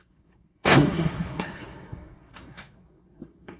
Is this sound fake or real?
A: fake